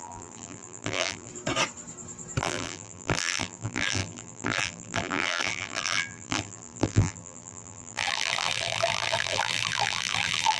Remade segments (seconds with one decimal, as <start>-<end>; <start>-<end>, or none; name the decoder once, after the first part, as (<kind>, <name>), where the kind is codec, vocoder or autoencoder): 0.0-1.3 (vocoder, BigVGAN v2); 2.4-10.6